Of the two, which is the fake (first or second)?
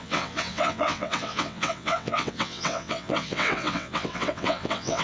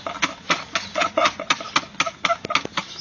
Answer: first